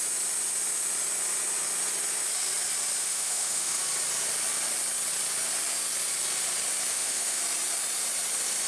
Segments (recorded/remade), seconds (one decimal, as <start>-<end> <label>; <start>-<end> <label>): 0.0-3.0 recorded; 3.0-3.8 remade; 3.8-6.9 recorded; 6.9-7.4 remade; 7.4-8.7 recorded